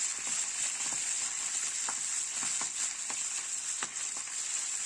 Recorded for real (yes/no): yes